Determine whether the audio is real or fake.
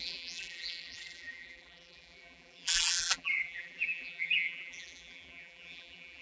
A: fake